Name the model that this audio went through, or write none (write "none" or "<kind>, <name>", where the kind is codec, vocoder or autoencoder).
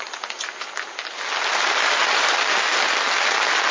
none